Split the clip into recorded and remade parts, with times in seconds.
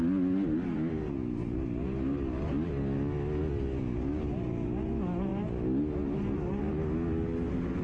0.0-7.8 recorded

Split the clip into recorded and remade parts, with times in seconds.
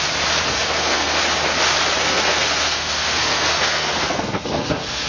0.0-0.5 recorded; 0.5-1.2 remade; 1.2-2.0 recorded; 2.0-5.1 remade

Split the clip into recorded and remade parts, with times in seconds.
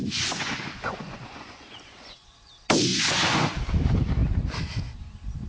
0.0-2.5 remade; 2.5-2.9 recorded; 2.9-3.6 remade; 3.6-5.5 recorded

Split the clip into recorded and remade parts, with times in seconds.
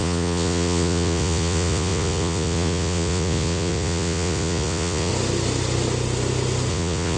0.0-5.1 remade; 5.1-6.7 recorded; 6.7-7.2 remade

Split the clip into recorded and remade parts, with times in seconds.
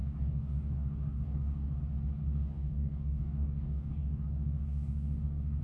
0.0-1.8 remade; 1.8-2.2 recorded; 2.2-5.6 remade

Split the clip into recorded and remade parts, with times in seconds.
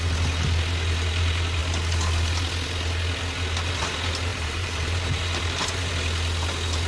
0.0-4.3 recorded; 4.3-5.9 remade; 5.9-6.9 recorded